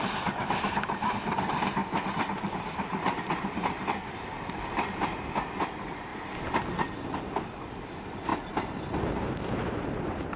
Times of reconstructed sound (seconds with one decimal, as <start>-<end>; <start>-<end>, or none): 0.0-1.8; 2.5-6.1; 7.3-8.3; 9.1-10.4